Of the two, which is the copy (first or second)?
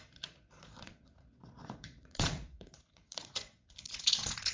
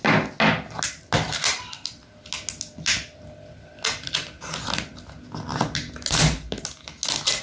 first